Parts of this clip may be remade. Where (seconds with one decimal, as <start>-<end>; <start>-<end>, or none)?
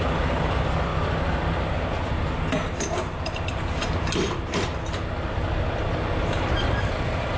none